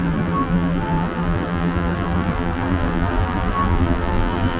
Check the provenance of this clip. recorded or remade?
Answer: remade